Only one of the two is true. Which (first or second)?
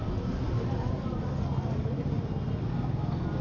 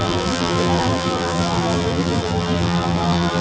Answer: first